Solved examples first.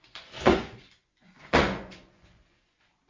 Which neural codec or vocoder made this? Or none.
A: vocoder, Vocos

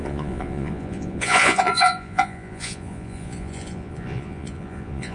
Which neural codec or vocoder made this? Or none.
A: vocoder, Vocos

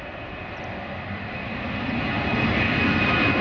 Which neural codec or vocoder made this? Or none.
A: none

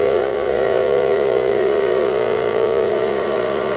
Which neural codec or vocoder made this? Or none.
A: vocoder, Vocos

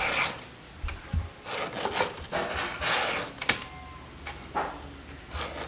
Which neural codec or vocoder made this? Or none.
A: none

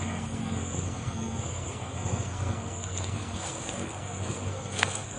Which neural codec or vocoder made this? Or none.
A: codec, SNAC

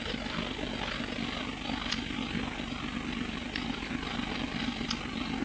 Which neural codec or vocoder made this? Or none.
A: none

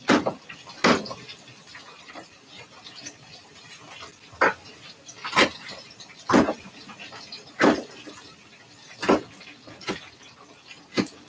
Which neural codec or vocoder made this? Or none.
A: none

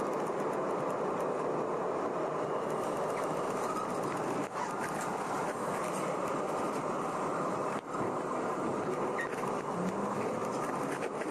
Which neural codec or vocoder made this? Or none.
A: none